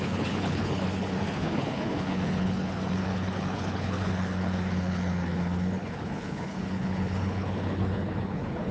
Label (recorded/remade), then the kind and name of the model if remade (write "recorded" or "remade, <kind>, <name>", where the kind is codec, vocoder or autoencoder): remade, codec, HILCodec